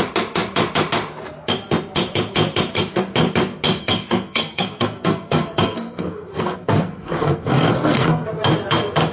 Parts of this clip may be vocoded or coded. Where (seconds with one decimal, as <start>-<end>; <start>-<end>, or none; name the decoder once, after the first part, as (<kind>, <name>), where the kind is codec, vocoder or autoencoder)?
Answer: 3.8-8.3 (codec, SNAC)

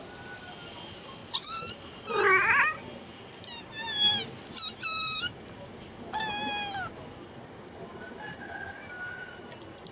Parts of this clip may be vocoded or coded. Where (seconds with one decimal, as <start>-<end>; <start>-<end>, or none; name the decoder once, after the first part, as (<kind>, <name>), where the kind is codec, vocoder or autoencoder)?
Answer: none

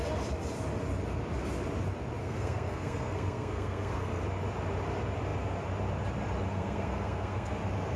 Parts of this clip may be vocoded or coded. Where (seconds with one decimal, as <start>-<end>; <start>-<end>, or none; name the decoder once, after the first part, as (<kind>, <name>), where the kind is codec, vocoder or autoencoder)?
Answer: 2.2-4.2 (codec, SNAC); 6.5-7.6

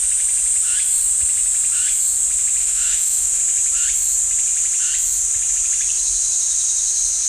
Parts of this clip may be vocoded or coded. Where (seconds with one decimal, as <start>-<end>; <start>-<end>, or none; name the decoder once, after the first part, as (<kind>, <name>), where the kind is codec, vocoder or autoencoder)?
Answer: 2.6-3.4 (autoencoder, DAC-VAE)